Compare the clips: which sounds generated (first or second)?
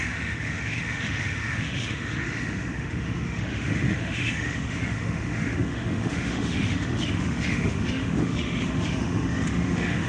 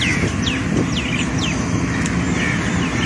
first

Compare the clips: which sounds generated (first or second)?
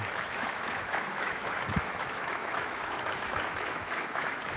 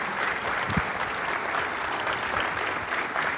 first